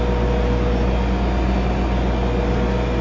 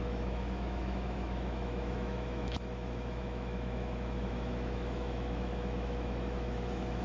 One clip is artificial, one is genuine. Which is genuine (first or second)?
first